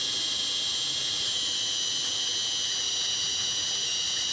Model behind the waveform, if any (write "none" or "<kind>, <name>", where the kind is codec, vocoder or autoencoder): none